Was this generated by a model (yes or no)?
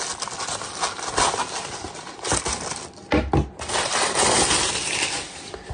no